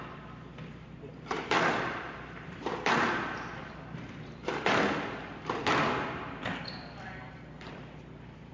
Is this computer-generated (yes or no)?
yes